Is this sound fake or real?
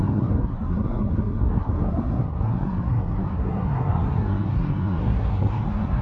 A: fake